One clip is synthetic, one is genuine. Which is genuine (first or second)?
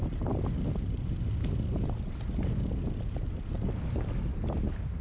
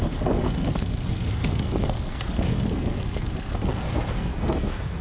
first